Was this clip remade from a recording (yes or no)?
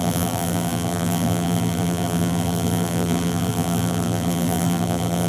yes